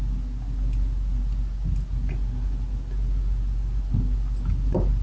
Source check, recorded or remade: recorded